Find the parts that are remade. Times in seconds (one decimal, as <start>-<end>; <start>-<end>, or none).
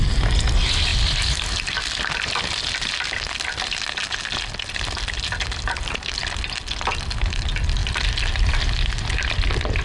none